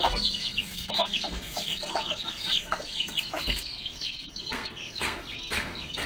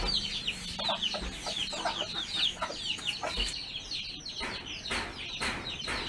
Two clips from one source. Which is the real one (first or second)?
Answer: second